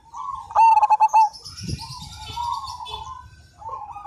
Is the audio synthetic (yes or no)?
no